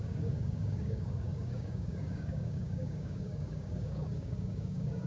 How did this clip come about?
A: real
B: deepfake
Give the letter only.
B